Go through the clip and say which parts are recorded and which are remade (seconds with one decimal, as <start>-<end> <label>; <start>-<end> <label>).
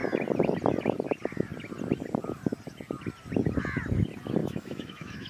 0.0-4.4 recorded; 4.4-5.3 remade